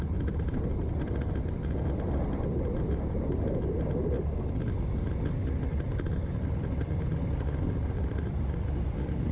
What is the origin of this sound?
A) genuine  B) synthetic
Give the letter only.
B